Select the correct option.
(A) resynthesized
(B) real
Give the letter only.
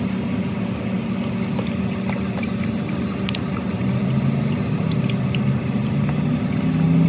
B